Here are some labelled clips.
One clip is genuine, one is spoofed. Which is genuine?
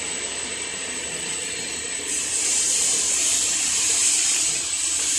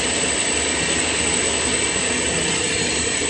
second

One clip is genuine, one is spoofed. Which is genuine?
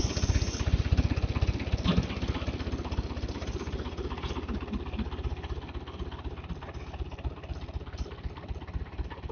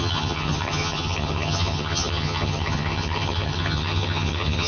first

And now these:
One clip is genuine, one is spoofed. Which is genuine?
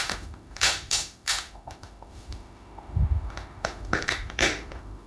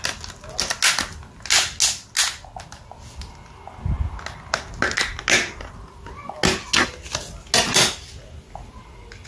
second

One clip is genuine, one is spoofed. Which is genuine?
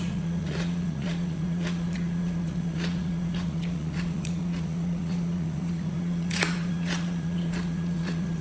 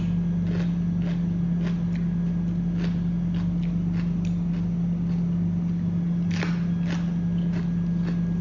second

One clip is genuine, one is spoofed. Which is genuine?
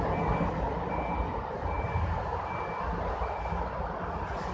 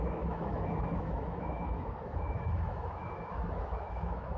first